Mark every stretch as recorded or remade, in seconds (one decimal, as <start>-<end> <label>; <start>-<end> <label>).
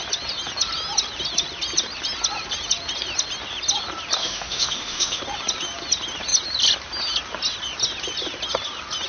0.0-4.2 recorded; 4.2-5.2 remade; 5.2-9.1 recorded